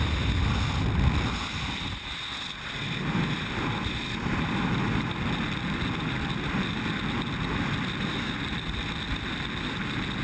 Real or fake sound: real